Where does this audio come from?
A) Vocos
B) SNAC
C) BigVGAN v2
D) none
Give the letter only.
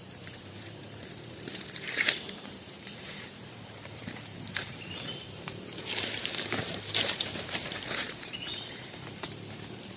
C